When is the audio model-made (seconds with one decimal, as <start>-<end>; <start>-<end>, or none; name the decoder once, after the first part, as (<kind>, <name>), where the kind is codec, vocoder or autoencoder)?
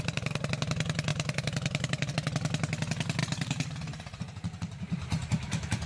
1.1-2.1 (vocoder, BigVGAN v2); 3.2-5.9